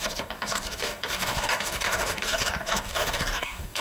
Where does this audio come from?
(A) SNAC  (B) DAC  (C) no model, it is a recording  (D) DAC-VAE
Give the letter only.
B